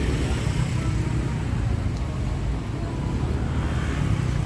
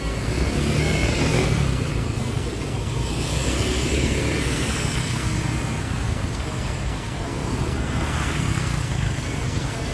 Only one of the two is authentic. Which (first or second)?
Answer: first